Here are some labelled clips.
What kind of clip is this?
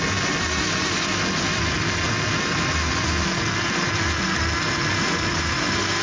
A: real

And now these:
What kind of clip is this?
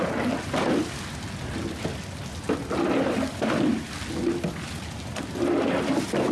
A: real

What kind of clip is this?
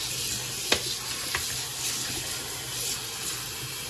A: real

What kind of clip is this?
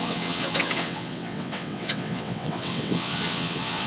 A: fake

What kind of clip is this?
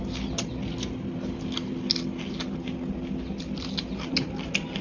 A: real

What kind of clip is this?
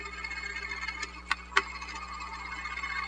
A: real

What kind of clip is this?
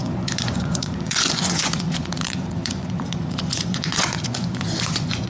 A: fake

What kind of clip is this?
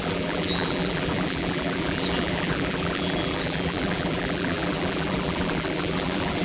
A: fake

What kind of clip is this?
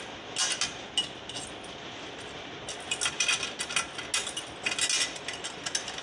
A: real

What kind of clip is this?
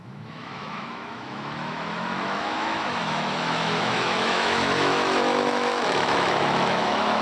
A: fake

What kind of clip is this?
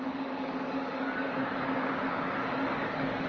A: fake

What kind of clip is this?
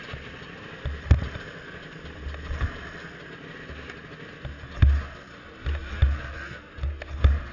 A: real